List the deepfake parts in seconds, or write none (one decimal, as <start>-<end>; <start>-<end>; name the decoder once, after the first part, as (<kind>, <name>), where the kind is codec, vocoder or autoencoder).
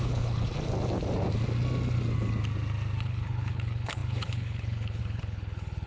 0.0-0.5 (codec, HILCodec); 3.0-5.9